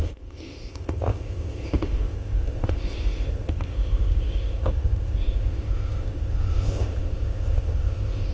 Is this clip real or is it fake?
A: fake